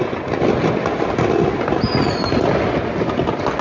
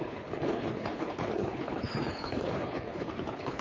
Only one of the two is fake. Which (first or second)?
second